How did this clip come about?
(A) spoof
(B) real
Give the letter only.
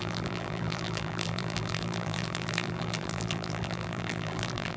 A